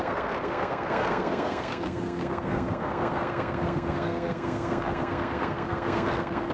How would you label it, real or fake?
fake